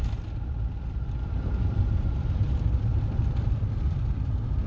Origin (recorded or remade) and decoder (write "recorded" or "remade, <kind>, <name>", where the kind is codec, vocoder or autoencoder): remade, vocoder, BigVGAN v2